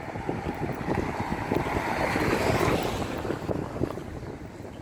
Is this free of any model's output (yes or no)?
yes